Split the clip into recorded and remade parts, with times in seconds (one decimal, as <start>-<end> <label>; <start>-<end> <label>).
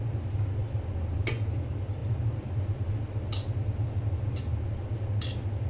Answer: 0.0-5.7 recorded